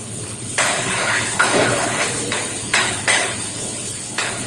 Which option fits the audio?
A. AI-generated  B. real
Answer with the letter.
A